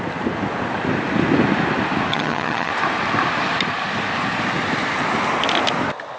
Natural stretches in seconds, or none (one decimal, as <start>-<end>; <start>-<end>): 0.0-2.1; 2.7-6.2